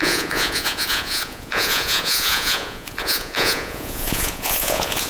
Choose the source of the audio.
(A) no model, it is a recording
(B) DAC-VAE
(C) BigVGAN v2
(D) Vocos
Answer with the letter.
D